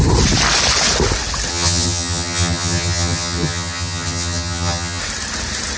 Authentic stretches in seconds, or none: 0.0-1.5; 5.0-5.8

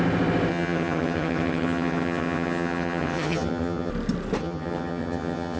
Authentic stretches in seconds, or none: 0.0-0.5; 3.9-4.4

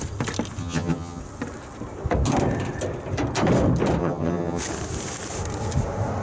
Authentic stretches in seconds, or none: 0.0-0.6; 1.2-4.0; 4.6-6.2

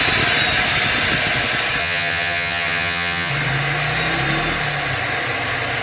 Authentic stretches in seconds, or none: 0.0-1.8; 3.3-5.8

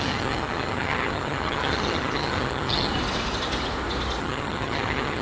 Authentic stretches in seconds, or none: 2.9-4.2

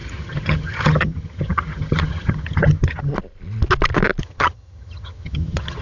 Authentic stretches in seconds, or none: 3.1-4.2

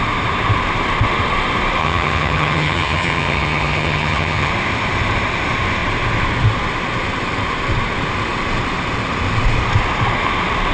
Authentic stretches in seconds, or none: 0.0-1.8; 4.5-10.7

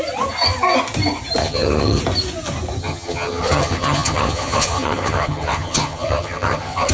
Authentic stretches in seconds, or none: 0.0-1.4; 2.0-2.8